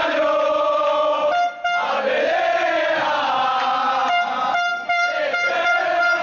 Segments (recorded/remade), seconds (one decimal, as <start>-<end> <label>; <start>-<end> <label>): 0.0-6.2 recorded